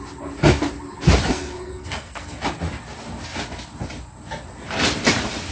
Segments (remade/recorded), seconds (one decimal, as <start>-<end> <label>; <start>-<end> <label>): 0.0-1.3 recorded; 1.3-2.4 remade; 2.4-5.5 recorded